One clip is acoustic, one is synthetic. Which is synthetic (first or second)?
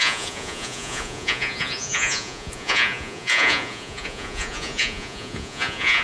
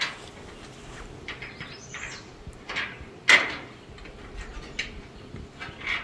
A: first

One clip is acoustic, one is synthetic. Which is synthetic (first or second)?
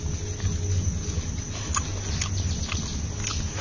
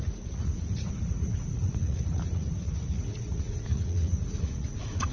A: second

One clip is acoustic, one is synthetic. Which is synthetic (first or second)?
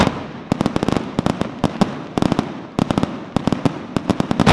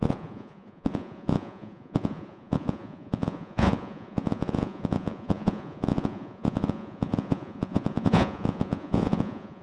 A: second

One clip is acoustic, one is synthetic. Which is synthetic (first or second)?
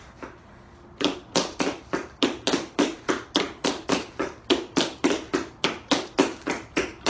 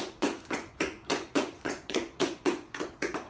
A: second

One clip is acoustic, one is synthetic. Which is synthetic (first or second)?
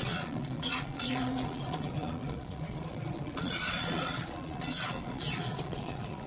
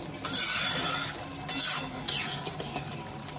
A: first